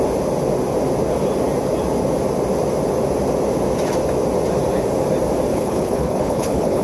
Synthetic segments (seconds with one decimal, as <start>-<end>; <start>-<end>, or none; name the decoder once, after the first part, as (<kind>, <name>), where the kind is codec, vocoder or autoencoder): 5.5-6.8 (codec, HILCodec)

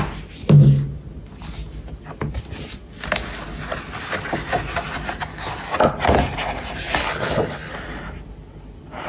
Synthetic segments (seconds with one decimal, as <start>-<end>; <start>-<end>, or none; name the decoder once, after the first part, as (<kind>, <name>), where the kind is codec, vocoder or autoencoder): 7.0-7.7 (codec, HILCodec)